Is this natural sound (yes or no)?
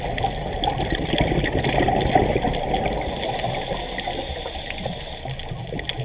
yes